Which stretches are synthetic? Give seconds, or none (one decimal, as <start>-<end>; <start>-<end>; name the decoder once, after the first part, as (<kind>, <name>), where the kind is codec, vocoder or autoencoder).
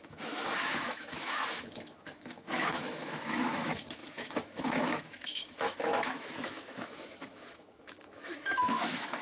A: 0.0-9.2 (autoencoder, DAC-VAE)